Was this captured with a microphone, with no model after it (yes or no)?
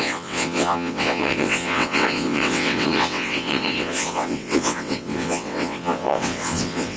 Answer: no